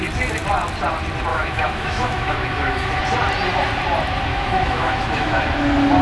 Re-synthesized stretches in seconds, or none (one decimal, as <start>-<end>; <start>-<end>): 1.3-3.0; 4.3-5.4